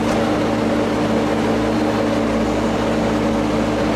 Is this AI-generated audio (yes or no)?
no